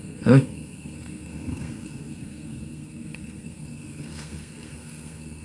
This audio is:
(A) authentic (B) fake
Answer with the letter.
B